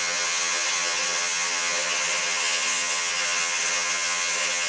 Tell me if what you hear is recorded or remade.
remade